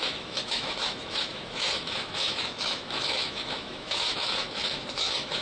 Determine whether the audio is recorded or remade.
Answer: remade